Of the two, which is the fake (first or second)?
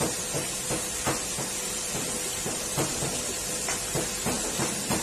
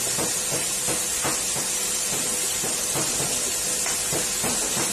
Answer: first